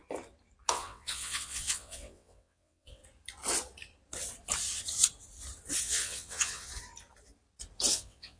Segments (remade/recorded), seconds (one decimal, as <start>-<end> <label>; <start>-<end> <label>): 0.0-0.7 recorded; 0.7-3.0 remade; 3.0-5.8 recorded; 5.8-6.7 remade; 6.7-7.9 recorded; 7.9-8.4 remade